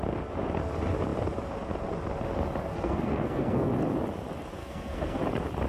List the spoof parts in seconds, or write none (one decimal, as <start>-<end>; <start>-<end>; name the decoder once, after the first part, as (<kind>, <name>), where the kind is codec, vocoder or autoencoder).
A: 2.7-3.7 (codec, SNAC); 4.6-5.2